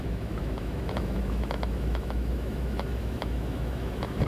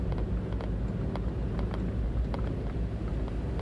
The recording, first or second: second